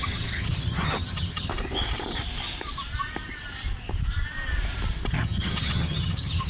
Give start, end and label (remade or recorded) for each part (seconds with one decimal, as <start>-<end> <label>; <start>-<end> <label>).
0.0-1.5 remade; 1.5-5.1 recorded; 5.1-6.5 remade